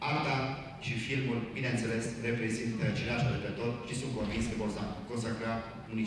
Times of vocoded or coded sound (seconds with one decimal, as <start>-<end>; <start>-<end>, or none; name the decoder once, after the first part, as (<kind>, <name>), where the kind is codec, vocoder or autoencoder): 0.0-5.3 (vocoder, BigVGAN v2)